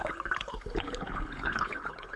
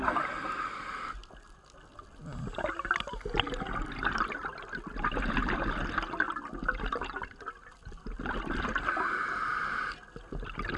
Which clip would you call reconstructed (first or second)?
first